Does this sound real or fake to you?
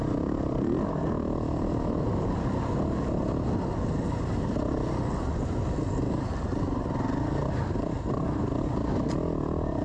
real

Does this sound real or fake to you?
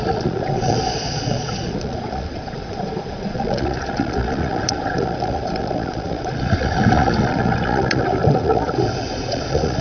fake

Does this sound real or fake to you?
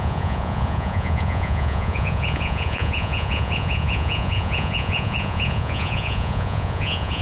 fake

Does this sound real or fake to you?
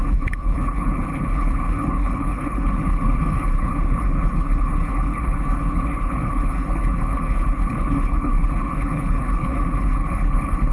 fake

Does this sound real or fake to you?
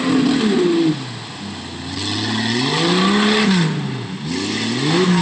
real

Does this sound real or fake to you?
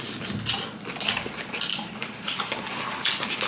real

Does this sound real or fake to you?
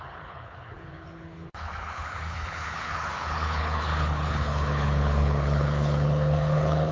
fake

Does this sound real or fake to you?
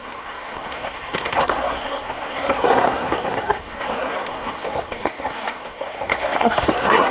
fake